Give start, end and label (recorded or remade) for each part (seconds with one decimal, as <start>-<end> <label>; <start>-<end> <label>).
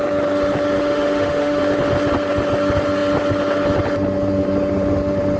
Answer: 0.0-0.8 recorded; 0.8-1.6 remade; 1.6-5.4 recorded